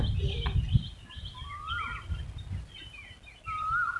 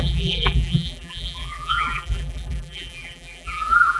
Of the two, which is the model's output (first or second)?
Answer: second